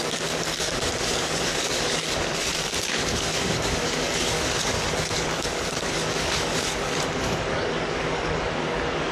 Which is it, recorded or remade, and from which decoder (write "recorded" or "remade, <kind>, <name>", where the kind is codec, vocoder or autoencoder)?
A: remade, codec, DAC